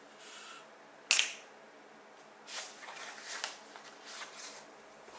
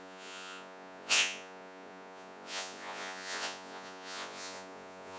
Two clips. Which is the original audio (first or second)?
first